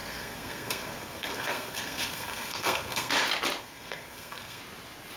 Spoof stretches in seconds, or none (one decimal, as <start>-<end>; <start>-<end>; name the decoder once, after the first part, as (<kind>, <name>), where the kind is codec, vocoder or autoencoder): 0.0-3.1 (codec, SNAC); 3.6-4.6